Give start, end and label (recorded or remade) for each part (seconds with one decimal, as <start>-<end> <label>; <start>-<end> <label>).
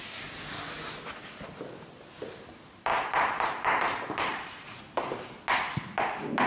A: 0.0-2.9 recorded; 2.9-4.8 remade; 4.8-6.5 recorded